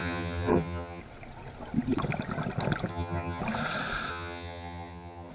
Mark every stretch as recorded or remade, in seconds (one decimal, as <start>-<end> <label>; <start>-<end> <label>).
0.0-1.0 remade; 1.0-2.9 recorded; 2.9-3.4 remade; 3.4-4.1 recorded; 4.1-5.3 remade